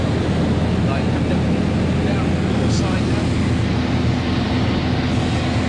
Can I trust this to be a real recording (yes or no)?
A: yes